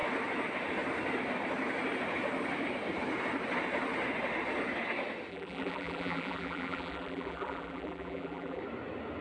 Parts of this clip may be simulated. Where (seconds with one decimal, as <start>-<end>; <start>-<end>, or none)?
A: 5.3-8.6